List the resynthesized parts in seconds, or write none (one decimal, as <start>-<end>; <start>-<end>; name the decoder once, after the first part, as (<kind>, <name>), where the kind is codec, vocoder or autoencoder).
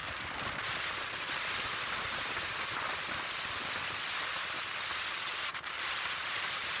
none